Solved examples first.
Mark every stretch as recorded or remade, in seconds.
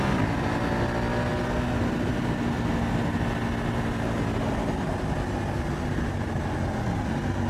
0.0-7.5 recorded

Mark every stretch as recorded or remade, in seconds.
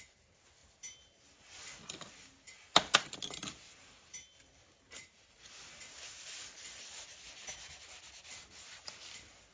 0.0-9.5 recorded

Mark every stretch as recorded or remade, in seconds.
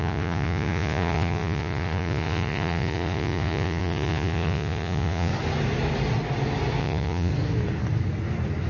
0.0-5.3 remade; 5.3-6.8 recorded; 6.8-7.3 remade; 7.3-8.7 recorded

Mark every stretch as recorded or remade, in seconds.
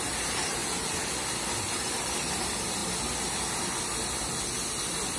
0.0-2.8 remade; 2.8-3.6 recorded; 3.6-5.2 remade